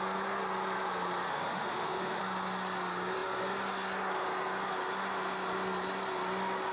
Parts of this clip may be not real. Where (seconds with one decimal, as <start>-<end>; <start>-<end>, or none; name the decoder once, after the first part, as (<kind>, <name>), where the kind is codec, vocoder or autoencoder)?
1.3-2.2 (autoencoder, DAC-VAE)